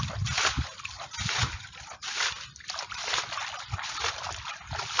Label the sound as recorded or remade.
recorded